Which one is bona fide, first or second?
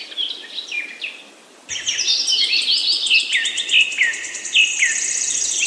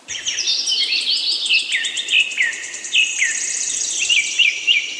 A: first